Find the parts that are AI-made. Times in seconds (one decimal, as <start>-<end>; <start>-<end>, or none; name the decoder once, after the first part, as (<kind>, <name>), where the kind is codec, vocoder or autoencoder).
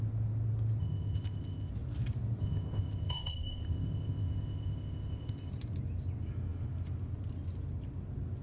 0.8-1.7 (codec, ZipCodec); 2.4-5.5